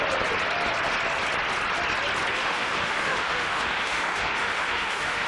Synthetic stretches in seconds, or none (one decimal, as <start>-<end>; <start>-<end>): 2.3-5.3